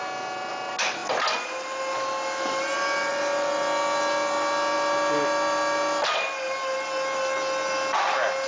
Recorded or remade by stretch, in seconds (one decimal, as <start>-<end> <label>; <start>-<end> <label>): 0.0-8.5 recorded